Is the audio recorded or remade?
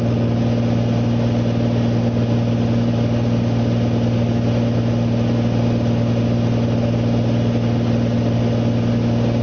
recorded